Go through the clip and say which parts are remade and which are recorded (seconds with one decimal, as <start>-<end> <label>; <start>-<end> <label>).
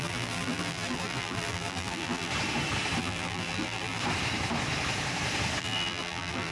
0.0-2.3 remade; 2.3-3.0 recorded; 3.0-4.0 remade; 4.0-5.6 recorded; 5.6-6.5 remade